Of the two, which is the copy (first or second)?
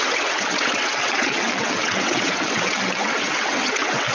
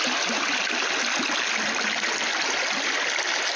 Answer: first